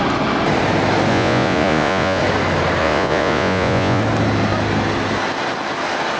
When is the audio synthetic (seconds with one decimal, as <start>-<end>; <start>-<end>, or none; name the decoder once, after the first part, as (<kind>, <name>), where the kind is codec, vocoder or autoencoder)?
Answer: 1.1-2.2 (vocoder, Vocos); 2.8-4.0